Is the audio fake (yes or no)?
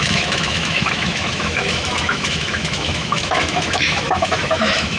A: yes